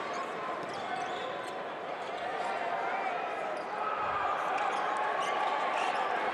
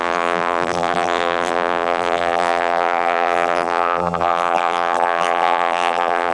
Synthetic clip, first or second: second